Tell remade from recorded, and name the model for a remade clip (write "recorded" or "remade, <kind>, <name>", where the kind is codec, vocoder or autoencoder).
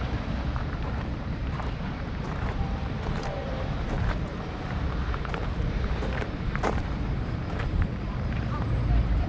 remade, vocoder, BigVGAN v2